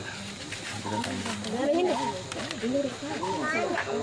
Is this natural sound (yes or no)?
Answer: yes